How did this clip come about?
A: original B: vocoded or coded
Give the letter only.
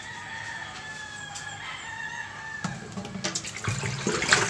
A